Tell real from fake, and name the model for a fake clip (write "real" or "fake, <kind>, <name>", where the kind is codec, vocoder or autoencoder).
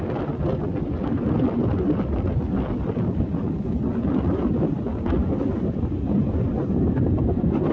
real